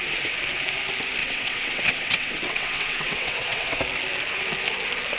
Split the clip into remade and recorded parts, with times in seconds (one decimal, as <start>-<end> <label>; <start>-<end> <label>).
0.0-1.2 recorded; 1.2-3.8 remade; 3.8-5.2 recorded